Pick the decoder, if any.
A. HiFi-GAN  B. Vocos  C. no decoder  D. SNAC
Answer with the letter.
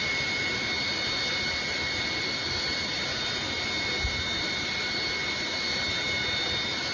C